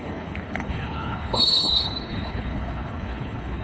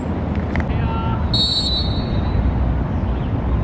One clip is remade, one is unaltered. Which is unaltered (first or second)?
second